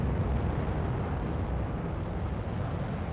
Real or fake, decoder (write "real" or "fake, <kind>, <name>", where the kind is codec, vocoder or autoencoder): real